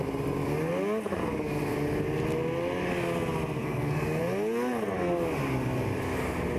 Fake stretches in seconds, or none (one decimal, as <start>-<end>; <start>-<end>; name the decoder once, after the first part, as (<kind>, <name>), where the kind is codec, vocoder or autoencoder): 3.6-4.2 (codec, SNAC)